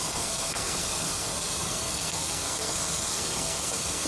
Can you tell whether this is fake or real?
fake